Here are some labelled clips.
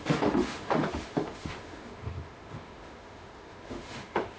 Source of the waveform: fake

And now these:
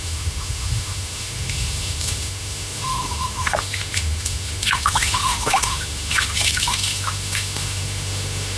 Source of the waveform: fake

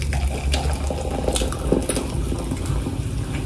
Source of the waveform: real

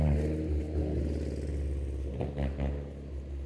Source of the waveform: real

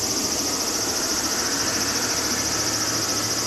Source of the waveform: real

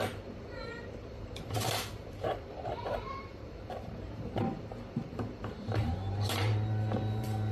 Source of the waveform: fake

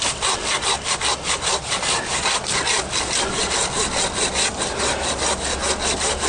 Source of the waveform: real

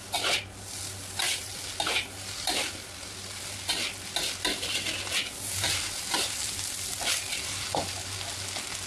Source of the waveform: real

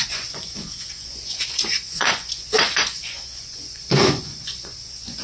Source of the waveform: fake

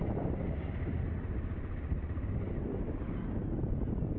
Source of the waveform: real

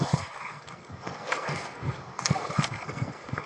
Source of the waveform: fake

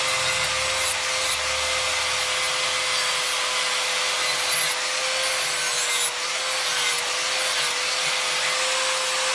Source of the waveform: real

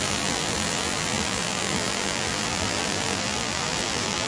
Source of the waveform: fake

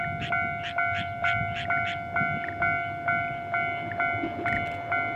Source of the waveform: real